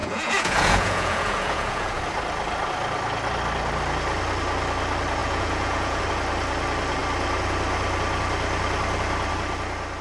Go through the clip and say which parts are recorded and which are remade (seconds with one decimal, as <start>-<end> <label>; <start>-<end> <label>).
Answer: 0.0-2.0 remade; 2.0-5.2 recorded; 5.2-6.0 remade; 6.0-10.0 recorded